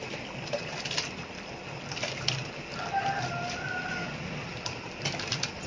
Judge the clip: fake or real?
real